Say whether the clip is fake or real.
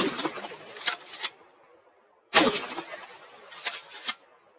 fake